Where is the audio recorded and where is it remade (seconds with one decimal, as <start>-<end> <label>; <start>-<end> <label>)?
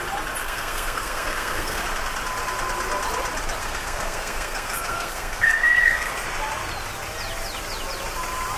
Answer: 0.0-0.4 recorded; 0.4-1.8 remade; 1.8-3.6 recorded; 3.6-6.1 remade; 6.1-8.6 recorded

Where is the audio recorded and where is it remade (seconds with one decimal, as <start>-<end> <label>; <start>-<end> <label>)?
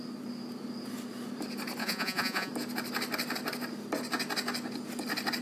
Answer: 0.0-1.8 recorded; 1.8-2.5 remade; 2.5-5.4 recorded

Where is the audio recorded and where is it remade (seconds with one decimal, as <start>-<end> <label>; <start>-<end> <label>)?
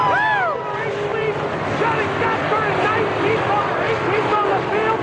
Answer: 0.0-5.0 recorded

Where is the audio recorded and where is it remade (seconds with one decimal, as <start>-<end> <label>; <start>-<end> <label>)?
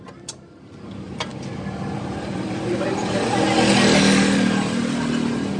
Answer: 0.0-1.3 recorded; 1.3-3.7 remade; 3.7-5.6 recorded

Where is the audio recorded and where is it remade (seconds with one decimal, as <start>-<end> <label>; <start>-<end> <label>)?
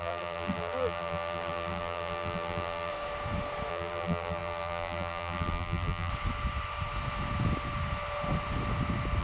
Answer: 0.0-2.9 remade; 2.9-3.7 recorded; 3.7-6.1 remade; 6.1-9.2 recorded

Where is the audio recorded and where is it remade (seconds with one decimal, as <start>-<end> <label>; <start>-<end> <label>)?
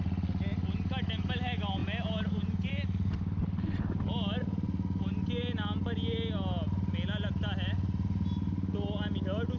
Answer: 0.0-9.6 recorded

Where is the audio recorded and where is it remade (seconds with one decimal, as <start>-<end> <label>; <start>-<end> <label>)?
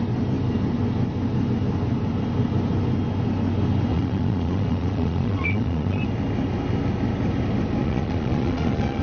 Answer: 0.0-3.9 recorded; 3.9-6.0 remade; 6.0-7.8 recorded; 7.8-9.0 remade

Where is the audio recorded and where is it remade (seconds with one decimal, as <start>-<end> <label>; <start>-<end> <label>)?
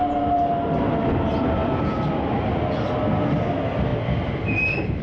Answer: 0.0-1.3 recorded; 1.3-3.0 remade; 3.0-3.9 recorded; 3.9-5.0 remade